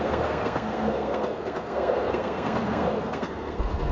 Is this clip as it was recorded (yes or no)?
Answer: no